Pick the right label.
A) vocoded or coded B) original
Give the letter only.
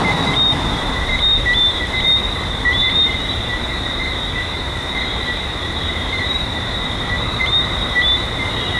A